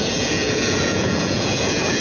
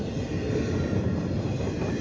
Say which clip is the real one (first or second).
second